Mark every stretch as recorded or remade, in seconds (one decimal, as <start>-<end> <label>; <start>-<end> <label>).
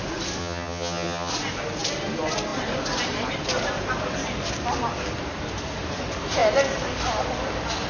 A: 0.0-0.4 recorded; 0.4-1.3 remade; 1.3-7.9 recorded